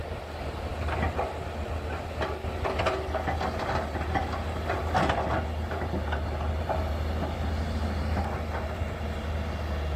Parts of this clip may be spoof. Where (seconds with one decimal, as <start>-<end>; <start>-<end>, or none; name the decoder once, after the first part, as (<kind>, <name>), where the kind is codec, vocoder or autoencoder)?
none